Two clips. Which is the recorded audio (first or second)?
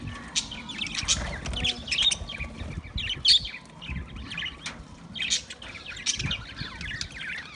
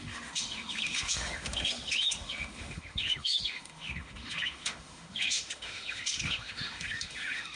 first